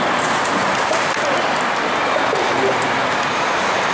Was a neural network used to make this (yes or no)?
no